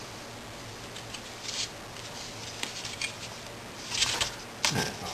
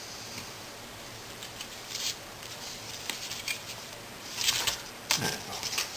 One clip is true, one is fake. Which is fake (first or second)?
second